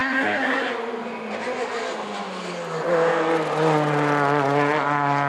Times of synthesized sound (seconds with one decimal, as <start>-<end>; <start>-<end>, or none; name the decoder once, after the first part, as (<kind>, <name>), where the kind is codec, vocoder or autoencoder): 0.0-0.7 (codec, SNAC)